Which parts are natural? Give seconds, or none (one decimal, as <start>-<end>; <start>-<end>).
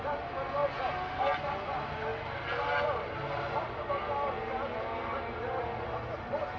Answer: 0.0-6.6